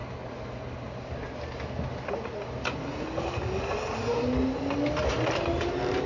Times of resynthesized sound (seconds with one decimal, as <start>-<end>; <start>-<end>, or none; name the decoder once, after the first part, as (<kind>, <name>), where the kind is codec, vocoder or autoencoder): none

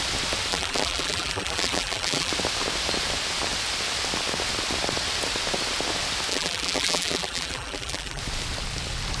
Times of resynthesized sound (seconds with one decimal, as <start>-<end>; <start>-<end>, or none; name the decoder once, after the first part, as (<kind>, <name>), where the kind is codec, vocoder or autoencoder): 0.5-2.3 (vocoder, BigVGAN v2); 6.3-8.2